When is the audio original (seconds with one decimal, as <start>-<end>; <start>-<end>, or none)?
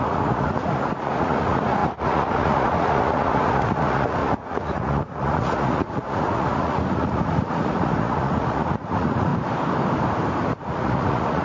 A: 9.3-10.6